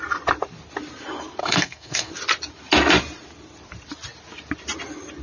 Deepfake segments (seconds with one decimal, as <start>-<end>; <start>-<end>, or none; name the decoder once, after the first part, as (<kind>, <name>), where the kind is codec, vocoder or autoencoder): 1.4-2.1 (codec, SNAC)